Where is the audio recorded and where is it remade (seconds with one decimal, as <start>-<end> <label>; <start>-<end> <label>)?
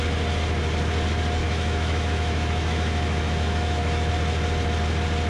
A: 0.0-1.4 recorded; 1.4-4.1 remade; 4.1-5.3 recorded